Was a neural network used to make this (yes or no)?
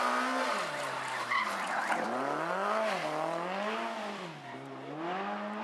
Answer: no